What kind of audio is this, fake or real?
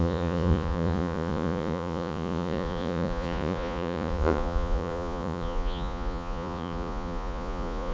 fake